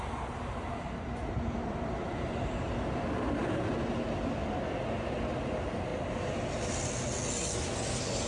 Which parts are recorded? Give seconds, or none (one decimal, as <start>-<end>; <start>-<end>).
0.0-8.3